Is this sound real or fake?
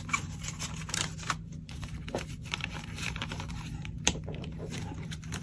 fake